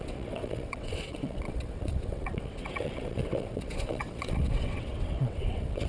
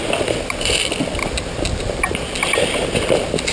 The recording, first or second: second